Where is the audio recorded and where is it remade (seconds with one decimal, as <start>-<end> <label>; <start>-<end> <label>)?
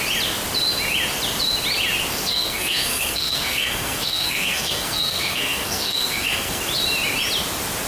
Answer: 0.0-2.1 recorded; 2.1-6.6 remade; 6.6-7.9 recorded